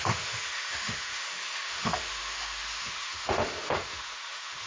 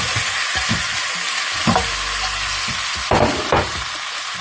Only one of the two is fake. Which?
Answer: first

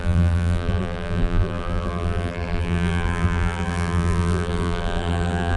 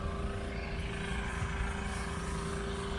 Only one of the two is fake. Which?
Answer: first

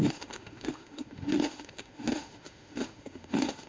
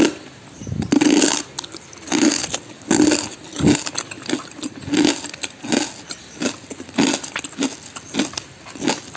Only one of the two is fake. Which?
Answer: first